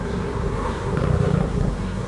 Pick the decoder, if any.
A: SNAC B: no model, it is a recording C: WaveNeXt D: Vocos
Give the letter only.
A